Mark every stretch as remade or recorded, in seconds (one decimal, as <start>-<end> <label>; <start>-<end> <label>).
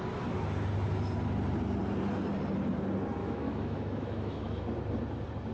0.0-3.2 recorded; 3.2-4.6 remade; 4.6-5.5 recorded